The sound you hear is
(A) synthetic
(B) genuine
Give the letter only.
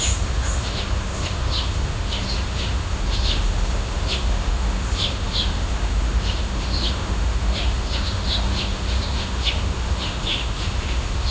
A